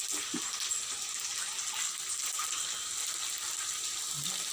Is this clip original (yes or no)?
yes